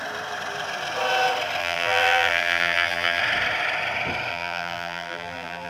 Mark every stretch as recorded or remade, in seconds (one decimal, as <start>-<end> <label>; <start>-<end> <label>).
0.0-1.6 recorded; 1.6-3.2 remade; 3.2-4.3 recorded; 4.3-5.7 remade